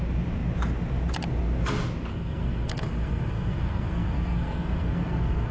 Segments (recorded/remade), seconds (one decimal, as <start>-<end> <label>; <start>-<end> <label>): 0.0-2.1 recorded; 2.1-5.5 remade

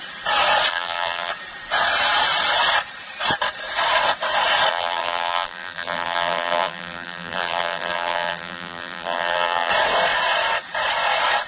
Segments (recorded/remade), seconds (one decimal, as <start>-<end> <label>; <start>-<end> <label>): 0.0-0.7 recorded; 0.7-1.3 remade; 1.3-4.7 recorded; 4.7-9.7 remade; 9.7-11.5 recorded